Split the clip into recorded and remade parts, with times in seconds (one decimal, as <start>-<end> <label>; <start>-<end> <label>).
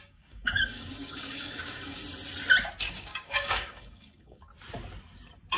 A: 0.0-2.0 remade; 2.0-2.9 recorded; 2.9-4.5 remade; 4.5-5.6 recorded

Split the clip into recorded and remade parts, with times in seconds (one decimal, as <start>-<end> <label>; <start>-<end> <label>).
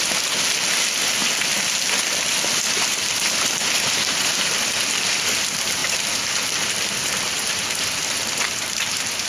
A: 0.0-9.3 recorded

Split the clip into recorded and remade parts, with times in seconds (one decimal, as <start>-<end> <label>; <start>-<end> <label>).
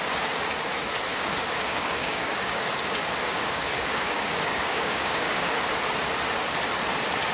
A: 0.0-1.1 recorded; 1.1-5.5 remade; 5.5-7.3 recorded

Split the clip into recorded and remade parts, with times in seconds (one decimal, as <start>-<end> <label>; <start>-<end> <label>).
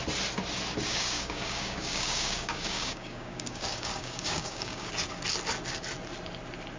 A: 0.0-0.8 recorded; 0.8-4.9 remade; 4.9-6.8 recorded